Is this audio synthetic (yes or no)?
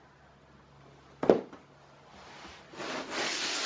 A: no